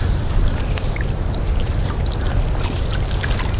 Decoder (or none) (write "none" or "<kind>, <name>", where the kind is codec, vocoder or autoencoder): none